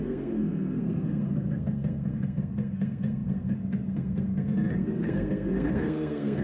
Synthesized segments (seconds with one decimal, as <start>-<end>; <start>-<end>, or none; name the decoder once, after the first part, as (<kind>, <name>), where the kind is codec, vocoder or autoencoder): 0.0-6.4 (codec, SNAC)